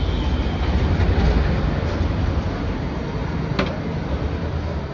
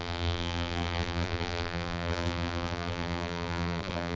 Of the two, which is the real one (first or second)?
first